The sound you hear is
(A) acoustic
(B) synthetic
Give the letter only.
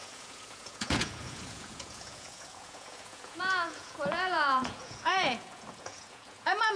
B